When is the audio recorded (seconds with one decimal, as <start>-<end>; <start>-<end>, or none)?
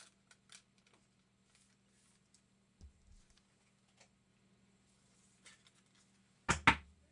0.0-7.1